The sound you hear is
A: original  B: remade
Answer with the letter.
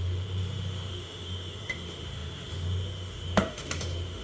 B